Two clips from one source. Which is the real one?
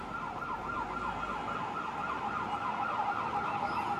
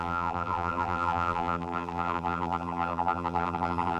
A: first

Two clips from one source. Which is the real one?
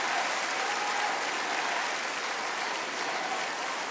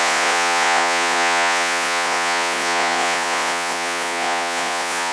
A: first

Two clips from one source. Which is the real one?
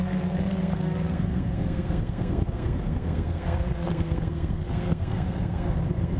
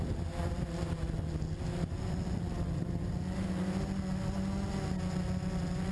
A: second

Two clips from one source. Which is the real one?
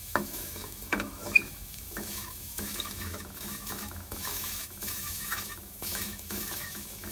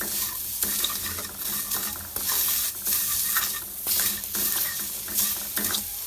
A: second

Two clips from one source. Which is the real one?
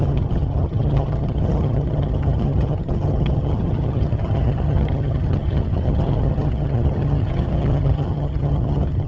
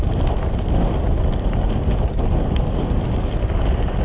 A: second